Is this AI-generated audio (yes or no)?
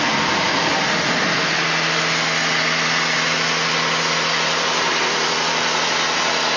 no